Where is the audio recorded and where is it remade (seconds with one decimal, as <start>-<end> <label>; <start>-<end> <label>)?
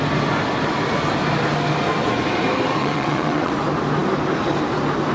0.0-2.8 recorded; 2.8-3.5 remade; 3.5-5.1 recorded